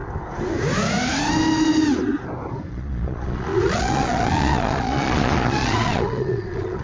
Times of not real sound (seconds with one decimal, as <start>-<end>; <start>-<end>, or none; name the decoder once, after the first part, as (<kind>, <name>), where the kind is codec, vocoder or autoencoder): 2.7-6.8 (vocoder, Vocos)